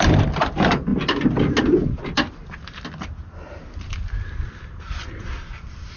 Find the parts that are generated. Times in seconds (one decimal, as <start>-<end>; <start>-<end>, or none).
none